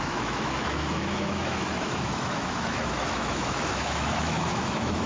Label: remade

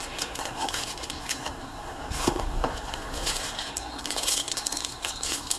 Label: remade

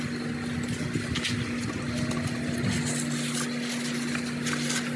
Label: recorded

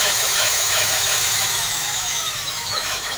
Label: remade